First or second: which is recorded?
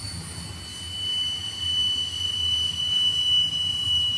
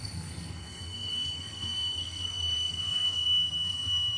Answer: first